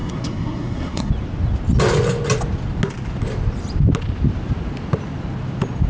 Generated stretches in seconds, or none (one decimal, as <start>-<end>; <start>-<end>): 0.0-1.1